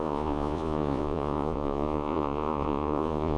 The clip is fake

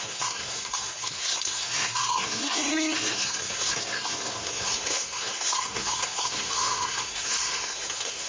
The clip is fake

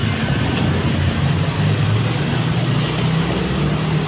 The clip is real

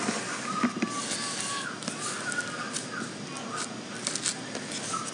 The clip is real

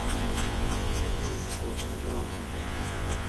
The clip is fake